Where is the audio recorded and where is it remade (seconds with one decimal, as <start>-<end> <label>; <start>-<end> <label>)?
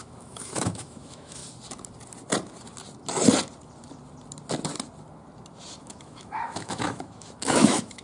0.0-1.4 remade; 1.4-5.8 recorded; 5.8-8.0 remade